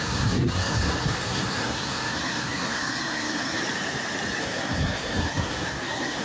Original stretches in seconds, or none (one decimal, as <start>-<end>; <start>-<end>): 3.6-4.4